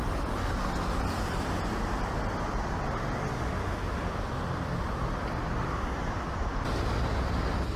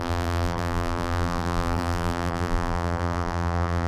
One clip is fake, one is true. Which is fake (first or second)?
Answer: second